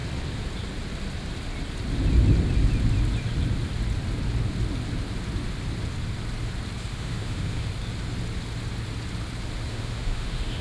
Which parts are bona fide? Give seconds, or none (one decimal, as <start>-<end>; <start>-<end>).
0.0-6.9; 7.7-9.7